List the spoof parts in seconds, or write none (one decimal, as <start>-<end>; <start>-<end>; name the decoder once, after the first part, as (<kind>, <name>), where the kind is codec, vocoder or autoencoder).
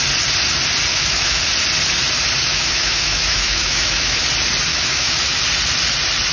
0.9-1.4 (autoencoder, DAC-VAE); 2.5-4.2; 4.7-5.4